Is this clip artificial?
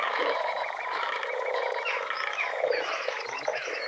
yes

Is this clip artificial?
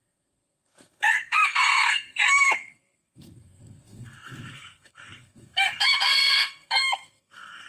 yes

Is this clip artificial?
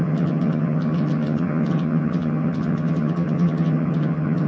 yes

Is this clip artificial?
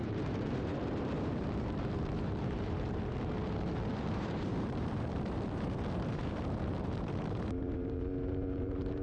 yes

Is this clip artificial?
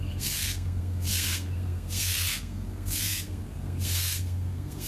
yes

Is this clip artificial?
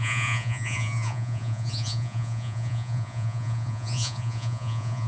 yes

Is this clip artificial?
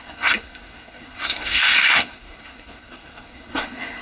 yes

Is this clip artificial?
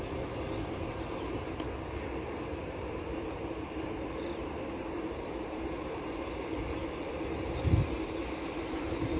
yes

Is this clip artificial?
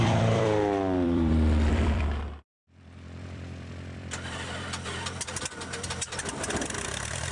yes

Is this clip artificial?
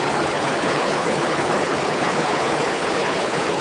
yes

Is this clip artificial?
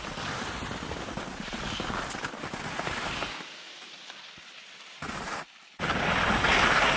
no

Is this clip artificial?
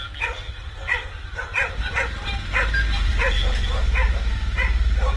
no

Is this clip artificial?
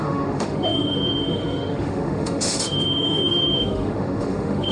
yes